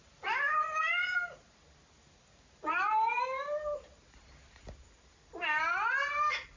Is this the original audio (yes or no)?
yes